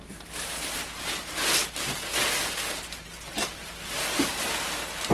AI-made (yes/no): no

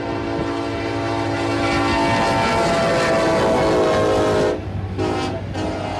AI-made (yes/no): no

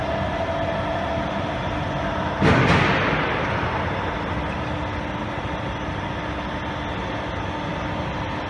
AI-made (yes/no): no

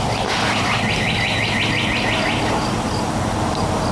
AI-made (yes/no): no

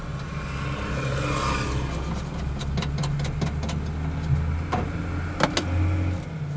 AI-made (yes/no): no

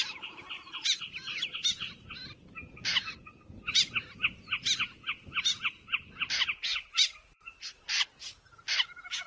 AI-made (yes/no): no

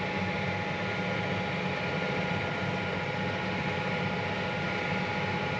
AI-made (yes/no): no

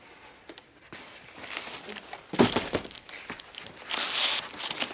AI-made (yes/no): no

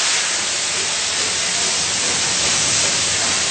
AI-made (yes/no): no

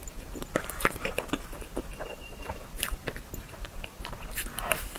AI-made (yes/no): yes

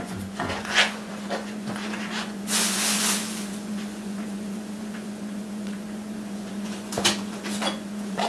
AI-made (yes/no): yes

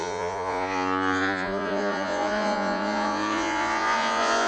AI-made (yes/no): yes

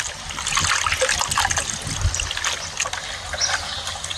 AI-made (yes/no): no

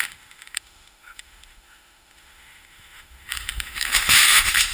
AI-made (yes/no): yes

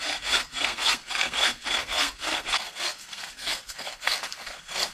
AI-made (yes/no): yes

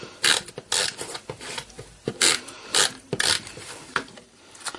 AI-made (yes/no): no